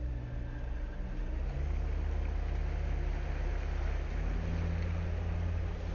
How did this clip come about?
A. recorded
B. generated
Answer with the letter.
A